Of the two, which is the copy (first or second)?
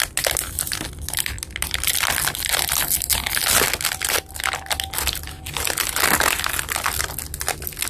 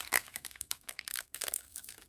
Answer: second